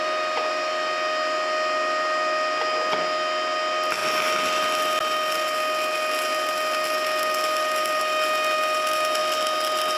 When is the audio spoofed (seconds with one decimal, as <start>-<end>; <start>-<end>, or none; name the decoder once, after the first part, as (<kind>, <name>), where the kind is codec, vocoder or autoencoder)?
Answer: none